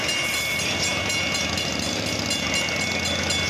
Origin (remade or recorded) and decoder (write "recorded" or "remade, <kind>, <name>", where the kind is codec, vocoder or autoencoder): recorded